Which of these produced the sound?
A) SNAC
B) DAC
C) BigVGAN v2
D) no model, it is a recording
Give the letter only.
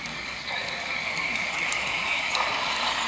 B